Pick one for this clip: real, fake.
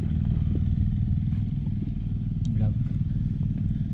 real